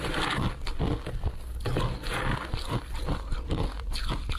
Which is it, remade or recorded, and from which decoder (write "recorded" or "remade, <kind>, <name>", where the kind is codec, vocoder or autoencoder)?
recorded